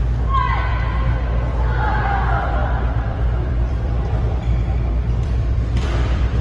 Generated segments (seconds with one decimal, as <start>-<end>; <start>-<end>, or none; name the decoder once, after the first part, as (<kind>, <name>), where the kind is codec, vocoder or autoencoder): 2.6-6.4 (vocoder, BigVGAN v2)